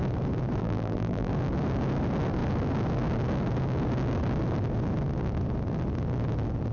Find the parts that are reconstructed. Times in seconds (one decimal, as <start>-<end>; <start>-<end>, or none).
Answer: 0.6-1.3